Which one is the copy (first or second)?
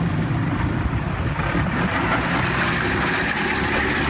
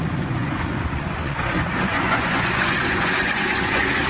second